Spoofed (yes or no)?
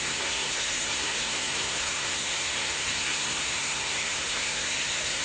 yes